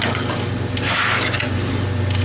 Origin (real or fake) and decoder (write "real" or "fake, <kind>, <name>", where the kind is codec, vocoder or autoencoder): real